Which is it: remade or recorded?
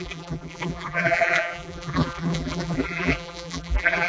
remade